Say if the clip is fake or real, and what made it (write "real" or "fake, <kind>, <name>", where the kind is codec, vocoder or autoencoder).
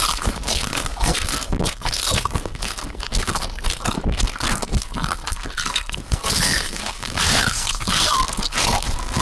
fake, codec, SNAC